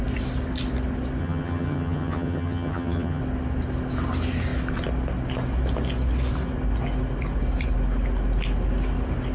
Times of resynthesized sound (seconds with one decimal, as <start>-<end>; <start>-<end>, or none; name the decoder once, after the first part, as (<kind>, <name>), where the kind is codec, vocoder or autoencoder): 1.2-3.2 (vocoder, HiFi-GAN)